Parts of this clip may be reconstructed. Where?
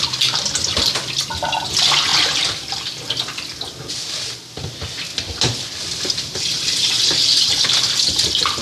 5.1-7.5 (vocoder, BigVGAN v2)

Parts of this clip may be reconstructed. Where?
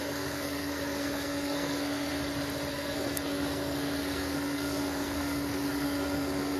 0.0-2.1 (codec, SNAC); 2.7-6.6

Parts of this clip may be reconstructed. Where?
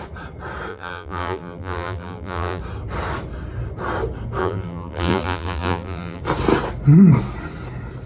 0.7-2.6 (vocoder, BigVGAN v2); 4.4-6.2